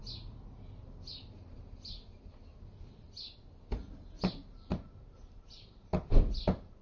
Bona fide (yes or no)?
yes